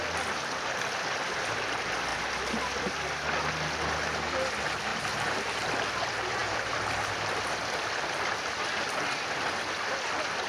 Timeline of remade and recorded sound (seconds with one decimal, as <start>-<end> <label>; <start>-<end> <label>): 0.0-4.9 recorded; 4.9-5.7 remade; 5.7-6.4 recorded; 6.4-7.3 remade; 7.3-10.5 recorded